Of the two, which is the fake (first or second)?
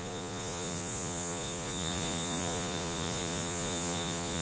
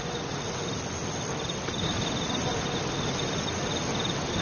first